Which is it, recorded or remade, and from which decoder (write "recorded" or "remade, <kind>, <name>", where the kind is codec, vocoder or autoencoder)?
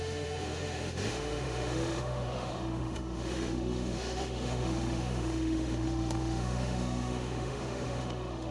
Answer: remade, autoencoder, DAC-VAE